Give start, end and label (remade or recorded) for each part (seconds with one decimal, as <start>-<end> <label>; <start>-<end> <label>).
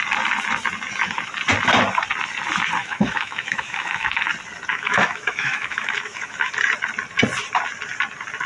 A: 0.0-2.8 recorded; 2.8-4.3 remade; 4.3-4.7 recorded; 4.7-6.5 remade; 6.5-8.5 recorded